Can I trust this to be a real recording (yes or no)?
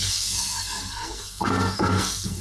no